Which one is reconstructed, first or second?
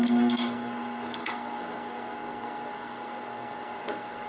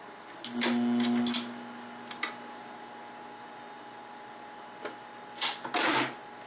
first